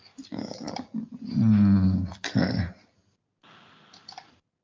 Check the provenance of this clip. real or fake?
real